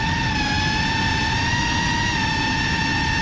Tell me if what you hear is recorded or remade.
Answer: recorded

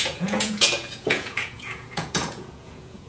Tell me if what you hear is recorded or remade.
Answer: remade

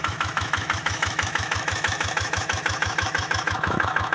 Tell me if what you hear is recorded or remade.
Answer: remade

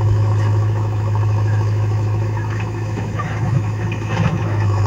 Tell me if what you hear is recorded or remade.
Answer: remade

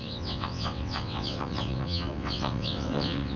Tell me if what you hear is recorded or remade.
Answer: remade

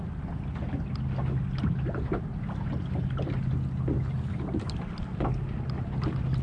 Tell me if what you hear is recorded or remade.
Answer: recorded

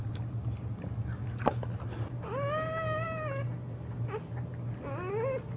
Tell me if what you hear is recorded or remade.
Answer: recorded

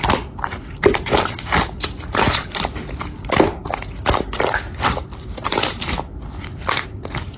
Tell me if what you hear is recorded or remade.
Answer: recorded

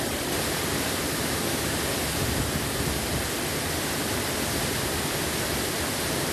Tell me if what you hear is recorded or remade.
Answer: recorded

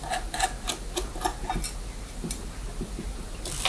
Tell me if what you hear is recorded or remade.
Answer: recorded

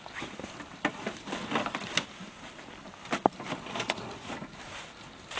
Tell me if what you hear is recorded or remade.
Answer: recorded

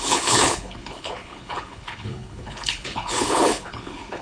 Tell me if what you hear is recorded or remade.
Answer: remade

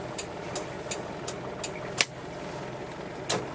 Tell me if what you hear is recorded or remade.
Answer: recorded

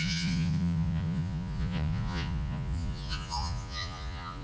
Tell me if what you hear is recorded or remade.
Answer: remade